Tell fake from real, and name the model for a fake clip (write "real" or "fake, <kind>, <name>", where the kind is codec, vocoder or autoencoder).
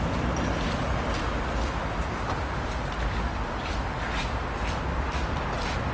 real